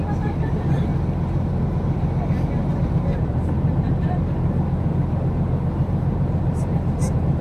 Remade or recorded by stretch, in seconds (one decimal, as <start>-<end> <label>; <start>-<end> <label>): 0.0-0.9 remade; 0.9-2.5 recorded; 2.5-7.4 remade